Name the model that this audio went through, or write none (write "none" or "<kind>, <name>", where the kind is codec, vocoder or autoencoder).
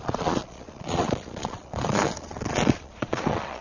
vocoder, Vocos